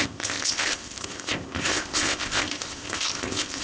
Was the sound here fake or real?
fake